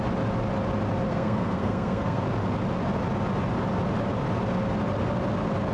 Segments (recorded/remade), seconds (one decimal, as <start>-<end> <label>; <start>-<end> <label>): 0.0-1.1 recorded; 1.1-2.2 remade; 2.2-5.7 recorded